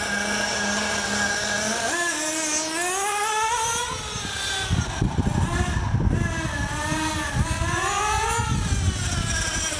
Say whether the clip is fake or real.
real